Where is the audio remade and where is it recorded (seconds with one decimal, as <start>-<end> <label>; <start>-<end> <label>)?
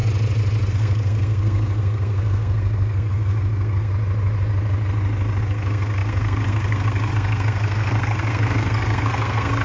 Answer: 0.0-0.7 recorded; 0.7-3.9 remade; 3.9-5.4 recorded; 5.4-9.6 remade